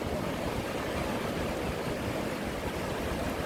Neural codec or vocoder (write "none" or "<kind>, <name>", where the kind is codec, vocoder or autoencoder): none